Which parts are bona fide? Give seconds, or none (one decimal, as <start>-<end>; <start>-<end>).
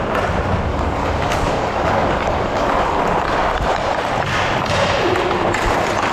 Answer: 0.0-0.7; 3.0-6.1